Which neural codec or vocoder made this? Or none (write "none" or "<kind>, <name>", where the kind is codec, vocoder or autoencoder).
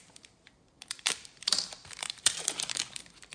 vocoder, BigVGAN v2